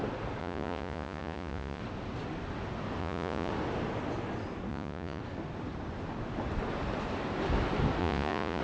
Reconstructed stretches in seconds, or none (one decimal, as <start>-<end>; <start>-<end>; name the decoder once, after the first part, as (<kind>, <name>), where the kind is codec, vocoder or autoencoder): 0.4-1.8 (vocoder, Vocos); 3.0-3.5; 4.7-5.2; 8.0-8.6